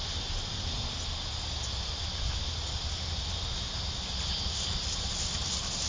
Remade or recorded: recorded